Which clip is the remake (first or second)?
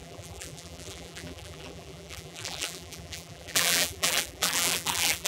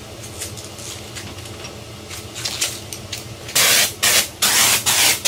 first